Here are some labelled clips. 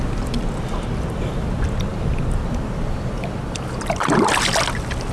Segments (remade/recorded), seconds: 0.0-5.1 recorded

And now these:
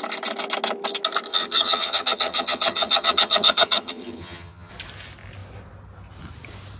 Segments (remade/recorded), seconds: 0.0-1.3 recorded; 1.3-4.7 remade; 4.7-6.8 recorded

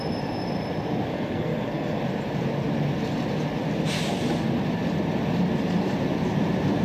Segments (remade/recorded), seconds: 0.0-1.1 recorded; 1.1-2.0 remade; 2.0-6.8 recorded